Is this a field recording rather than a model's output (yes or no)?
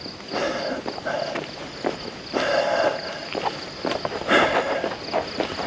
yes